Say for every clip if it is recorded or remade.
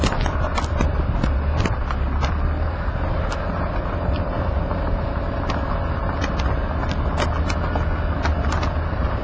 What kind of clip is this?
recorded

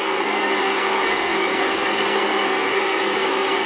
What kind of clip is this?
remade